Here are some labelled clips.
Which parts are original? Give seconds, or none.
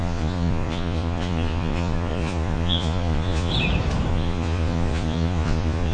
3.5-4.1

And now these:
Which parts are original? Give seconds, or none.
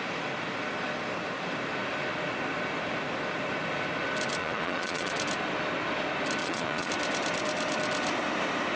0.0-4.4; 5.1-6.4; 6.9-8.8